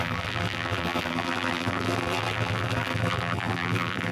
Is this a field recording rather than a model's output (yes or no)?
no